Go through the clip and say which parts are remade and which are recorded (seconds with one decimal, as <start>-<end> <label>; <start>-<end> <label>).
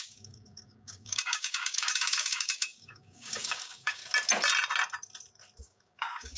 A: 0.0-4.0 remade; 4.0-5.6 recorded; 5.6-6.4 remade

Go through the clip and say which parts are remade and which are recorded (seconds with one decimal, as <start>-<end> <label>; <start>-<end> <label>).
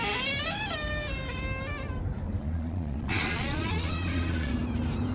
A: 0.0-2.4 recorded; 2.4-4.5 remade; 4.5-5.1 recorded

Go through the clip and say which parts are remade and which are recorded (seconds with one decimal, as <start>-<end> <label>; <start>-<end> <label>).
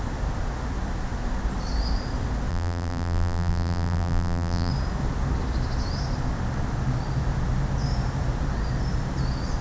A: 0.0-2.5 recorded; 2.5-4.7 remade; 4.7-9.6 recorded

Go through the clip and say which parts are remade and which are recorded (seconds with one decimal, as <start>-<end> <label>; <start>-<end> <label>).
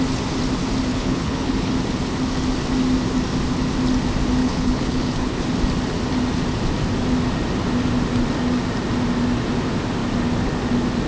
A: 0.0-0.9 recorded; 0.9-1.7 remade; 1.7-4.4 recorded; 4.4-5.4 remade; 5.4-11.1 recorded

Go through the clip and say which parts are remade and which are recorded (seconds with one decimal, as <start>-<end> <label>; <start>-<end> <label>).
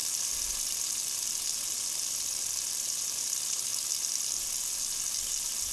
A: 0.0-5.7 recorded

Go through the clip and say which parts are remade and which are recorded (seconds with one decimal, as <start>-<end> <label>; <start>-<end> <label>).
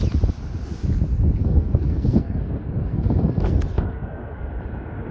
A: 0.0-1.4 recorded; 1.4-4.5 remade; 4.5-5.1 recorded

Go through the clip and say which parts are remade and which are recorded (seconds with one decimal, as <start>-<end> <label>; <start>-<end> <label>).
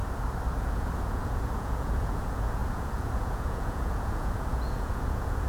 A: 0.0-0.6 recorded; 0.6-5.5 remade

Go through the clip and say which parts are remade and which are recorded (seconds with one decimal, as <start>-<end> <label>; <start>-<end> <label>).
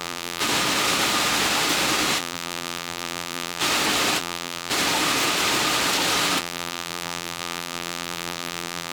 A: 0.0-0.4 remade; 0.4-2.2 recorded; 2.2-3.6 remade; 3.6-4.2 recorded; 4.2-4.7 remade; 4.7-6.4 recorded; 6.4-8.9 remade